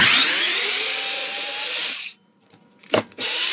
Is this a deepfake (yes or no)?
yes